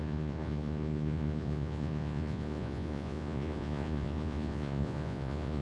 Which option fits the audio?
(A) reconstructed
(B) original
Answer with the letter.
A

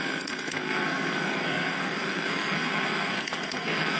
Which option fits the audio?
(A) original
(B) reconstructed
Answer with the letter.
B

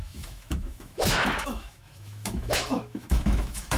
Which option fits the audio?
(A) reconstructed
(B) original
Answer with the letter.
A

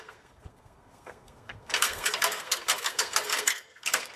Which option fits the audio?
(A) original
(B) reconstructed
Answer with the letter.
B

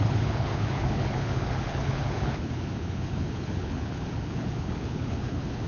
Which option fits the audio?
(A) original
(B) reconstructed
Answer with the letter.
B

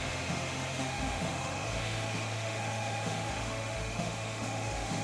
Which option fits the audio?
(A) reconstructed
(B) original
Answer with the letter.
A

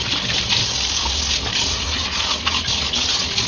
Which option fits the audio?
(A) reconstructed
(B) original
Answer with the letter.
B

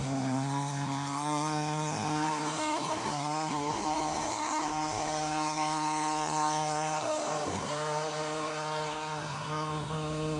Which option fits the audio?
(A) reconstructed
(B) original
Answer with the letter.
A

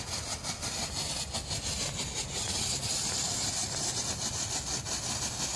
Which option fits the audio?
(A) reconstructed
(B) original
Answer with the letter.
B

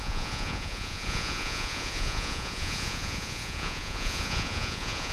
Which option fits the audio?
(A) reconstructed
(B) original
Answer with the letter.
A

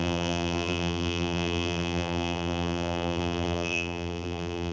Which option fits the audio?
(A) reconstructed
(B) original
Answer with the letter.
A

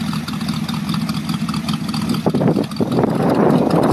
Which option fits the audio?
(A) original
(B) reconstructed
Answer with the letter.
A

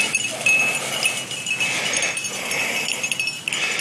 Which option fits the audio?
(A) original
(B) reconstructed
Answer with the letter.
A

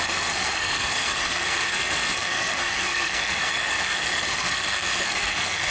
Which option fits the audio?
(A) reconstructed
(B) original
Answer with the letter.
A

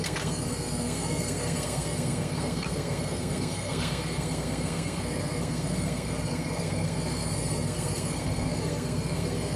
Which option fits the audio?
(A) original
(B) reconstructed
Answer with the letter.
B